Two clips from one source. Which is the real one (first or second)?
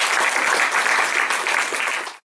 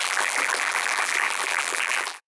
first